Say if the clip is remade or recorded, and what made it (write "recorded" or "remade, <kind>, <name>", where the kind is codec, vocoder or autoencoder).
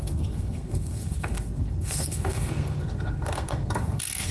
remade, codec, SNAC